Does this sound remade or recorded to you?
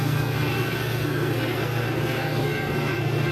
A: remade